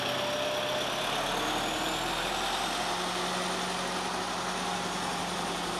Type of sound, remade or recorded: recorded